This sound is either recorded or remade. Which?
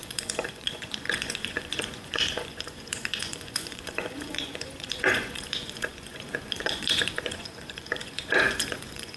remade